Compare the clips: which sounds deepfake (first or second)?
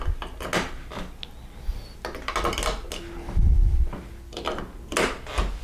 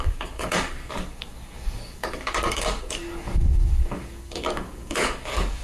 second